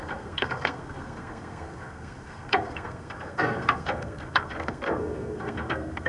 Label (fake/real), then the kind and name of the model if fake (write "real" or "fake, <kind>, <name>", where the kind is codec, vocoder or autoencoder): fake, codec, SNAC